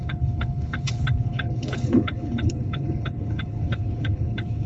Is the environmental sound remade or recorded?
remade